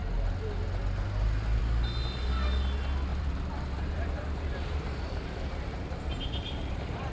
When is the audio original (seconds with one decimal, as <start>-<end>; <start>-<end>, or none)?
0.0-3.1